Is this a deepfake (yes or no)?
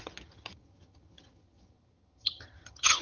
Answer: yes